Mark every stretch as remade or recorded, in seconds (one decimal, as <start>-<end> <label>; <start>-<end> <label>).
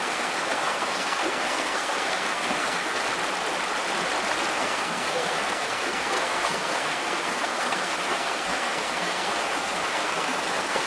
0.0-3.0 remade; 3.0-4.5 recorded; 4.5-10.9 remade